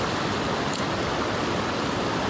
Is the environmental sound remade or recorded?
recorded